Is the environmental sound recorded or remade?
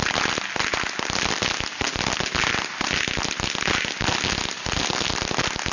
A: recorded